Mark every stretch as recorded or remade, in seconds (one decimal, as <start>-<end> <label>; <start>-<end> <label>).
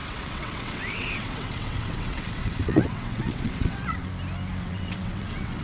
0.0-4.1 remade; 4.1-4.6 recorded; 4.6-5.6 remade